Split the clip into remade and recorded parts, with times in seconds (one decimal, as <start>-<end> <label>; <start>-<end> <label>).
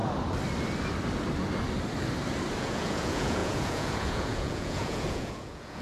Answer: 0.0-2.6 recorded; 2.6-5.8 remade